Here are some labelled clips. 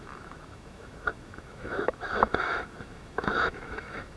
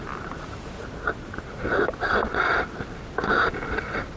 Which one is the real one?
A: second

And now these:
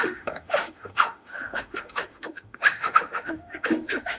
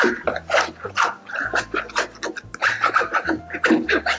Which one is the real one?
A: second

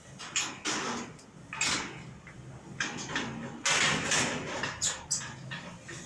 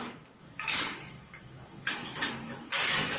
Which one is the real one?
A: first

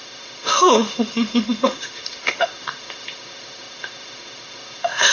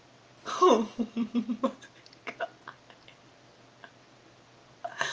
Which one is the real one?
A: second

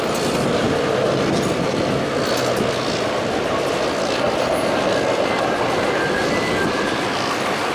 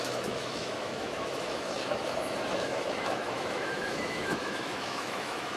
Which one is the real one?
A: first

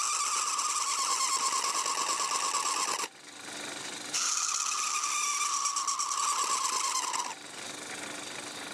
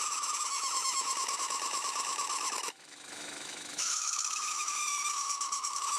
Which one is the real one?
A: first